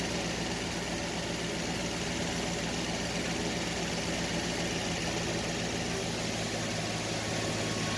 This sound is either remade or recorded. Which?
recorded